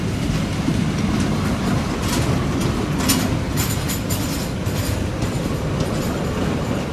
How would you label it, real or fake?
real